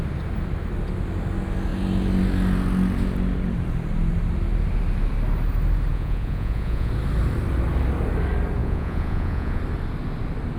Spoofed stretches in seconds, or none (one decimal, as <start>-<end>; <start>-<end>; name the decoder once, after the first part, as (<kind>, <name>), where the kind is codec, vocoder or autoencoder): 5.9-6.9 (vocoder, Vocos); 8.6-9.6